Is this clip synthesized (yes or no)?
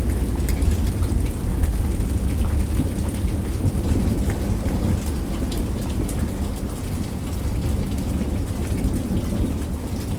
no